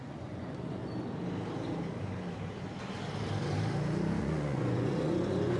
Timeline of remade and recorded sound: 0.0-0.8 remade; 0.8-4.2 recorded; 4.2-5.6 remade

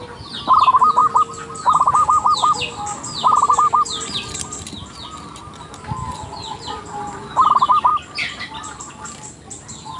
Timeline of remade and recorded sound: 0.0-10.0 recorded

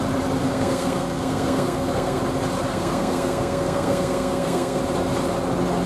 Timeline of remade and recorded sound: 0.0-0.4 recorded; 0.4-2.2 remade; 2.2-2.7 recorded; 2.7-4.8 remade; 4.8-5.9 recorded

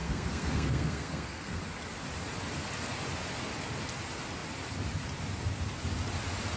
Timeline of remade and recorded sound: 0.0-1.6 remade; 1.6-6.6 recorded